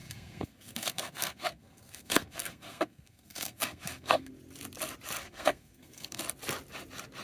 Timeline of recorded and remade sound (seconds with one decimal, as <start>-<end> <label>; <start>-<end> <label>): 0.0-4.3 remade; 4.3-5.2 recorded; 5.2-6.2 remade; 6.2-7.2 recorded